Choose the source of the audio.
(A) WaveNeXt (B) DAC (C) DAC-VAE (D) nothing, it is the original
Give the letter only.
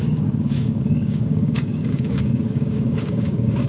B